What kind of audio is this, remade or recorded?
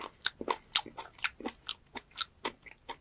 recorded